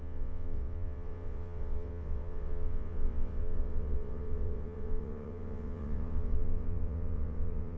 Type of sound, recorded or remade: remade